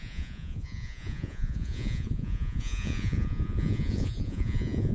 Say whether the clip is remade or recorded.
remade